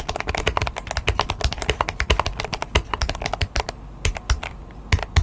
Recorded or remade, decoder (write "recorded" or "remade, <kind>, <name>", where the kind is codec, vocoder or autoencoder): recorded